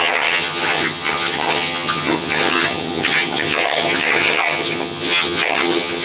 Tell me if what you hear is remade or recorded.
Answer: remade